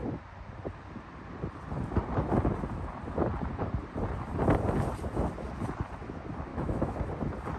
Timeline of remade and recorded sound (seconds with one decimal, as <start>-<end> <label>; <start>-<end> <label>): 0.0-6.5 recorded; 6.5-7.1 remade; 7.1-7.6 recorded